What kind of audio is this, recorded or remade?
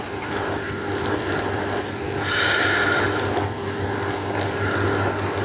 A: recorded